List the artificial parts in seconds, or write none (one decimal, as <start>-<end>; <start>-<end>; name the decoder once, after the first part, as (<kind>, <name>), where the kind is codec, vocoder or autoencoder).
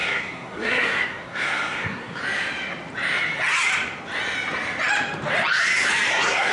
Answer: 0.0-2.2 (codec, SNAC); 6.1-6.5